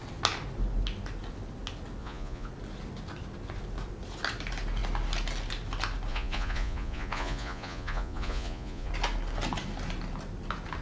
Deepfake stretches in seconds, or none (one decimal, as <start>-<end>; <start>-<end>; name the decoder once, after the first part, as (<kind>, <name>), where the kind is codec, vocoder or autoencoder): 2.0-2.5 (vocoder, Vocos); 6.1-8.9